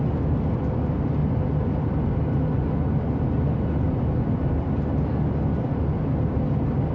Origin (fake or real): real